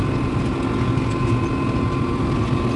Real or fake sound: real